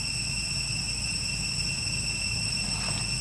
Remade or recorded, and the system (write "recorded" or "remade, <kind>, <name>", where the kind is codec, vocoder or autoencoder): recorded